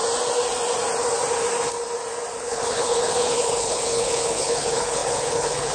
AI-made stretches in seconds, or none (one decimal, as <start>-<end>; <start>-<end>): 2.4-5.7